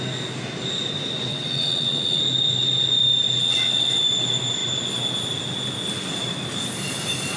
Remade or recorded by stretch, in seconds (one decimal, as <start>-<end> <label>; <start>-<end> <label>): 0.0-1.3 recorded; 1.3-2.2 remade; 2.2-3.4 recorded; 3.4-4.0 remade; 4.0-7.4 recorded